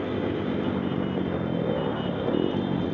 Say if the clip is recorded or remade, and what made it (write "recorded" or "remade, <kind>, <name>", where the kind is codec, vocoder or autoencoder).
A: recorded